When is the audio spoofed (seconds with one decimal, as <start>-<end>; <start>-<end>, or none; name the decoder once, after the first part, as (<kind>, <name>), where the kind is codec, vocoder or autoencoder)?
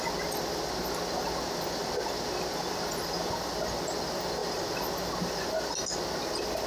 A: none